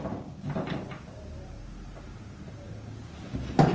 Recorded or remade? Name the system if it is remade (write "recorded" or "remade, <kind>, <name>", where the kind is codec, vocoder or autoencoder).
recorded